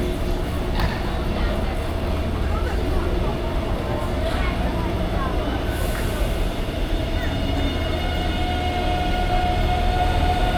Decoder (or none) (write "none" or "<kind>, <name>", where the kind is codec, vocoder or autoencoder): none